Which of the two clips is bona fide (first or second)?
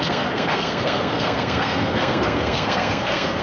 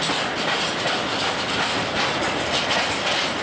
second